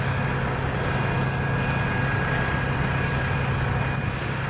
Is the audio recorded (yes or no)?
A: yes